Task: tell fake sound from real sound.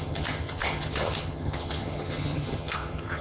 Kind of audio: fake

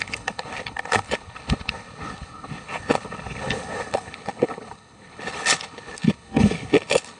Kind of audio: fake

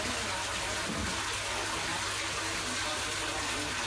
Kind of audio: real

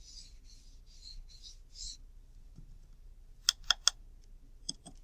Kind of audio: real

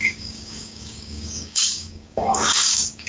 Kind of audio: fake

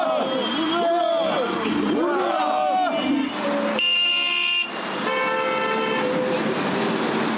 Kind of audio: real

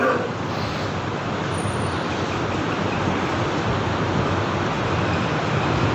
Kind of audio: real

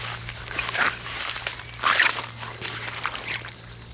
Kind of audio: real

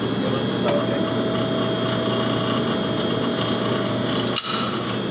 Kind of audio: real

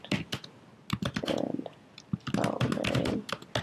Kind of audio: real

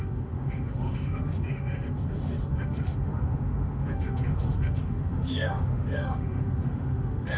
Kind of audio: fake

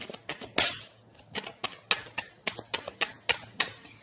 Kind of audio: real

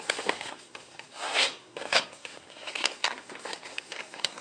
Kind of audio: fake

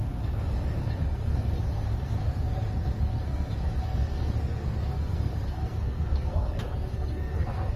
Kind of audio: fake